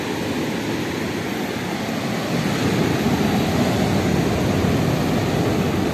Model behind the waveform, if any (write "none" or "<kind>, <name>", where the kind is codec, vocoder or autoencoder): none